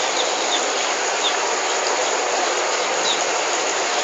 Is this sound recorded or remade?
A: recorded